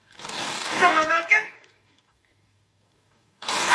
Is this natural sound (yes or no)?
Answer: no